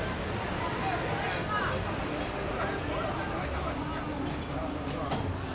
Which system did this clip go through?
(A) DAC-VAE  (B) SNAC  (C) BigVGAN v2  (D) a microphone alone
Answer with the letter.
D